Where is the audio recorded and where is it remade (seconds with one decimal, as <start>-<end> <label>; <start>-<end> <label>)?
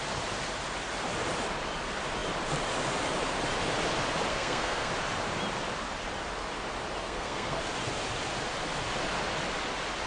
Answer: 0.0-4.3 recorded; 4.3-4.9 remade; 4.9-7.0 recorded; 7.0-7.6 remade; 7.6-10.1 recorded